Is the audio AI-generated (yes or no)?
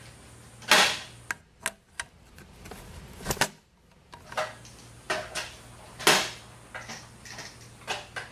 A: no